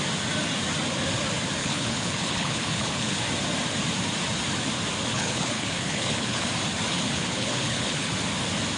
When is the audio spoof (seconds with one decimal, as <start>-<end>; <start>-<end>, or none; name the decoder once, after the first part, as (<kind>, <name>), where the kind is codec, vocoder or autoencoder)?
1.6-3.2 (codec, HILCodec); 5.1-6.5; 6.9-8.1